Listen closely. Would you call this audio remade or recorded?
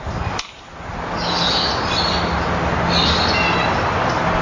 recorded